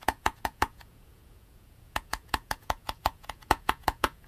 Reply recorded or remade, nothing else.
remade